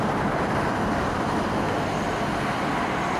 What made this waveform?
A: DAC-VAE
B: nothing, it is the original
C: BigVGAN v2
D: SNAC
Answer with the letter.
B